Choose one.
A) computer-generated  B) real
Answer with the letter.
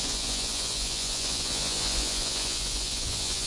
A